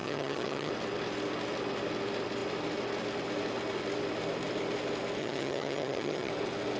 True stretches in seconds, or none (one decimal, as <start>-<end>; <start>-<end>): 0.7-5.2; 6.3-6.8